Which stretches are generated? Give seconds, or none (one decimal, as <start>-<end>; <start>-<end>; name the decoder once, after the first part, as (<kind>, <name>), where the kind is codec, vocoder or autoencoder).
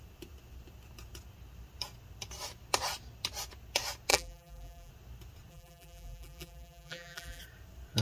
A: 4.1-4.9 (vocoder, BigVGAN v2); 5.5-7.4